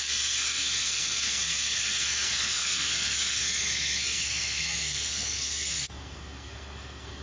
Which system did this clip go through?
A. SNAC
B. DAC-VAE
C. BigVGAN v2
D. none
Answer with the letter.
A